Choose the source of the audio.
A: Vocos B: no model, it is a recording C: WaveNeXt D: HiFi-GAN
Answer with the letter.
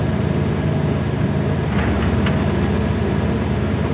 B